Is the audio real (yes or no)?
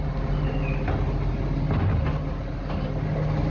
yes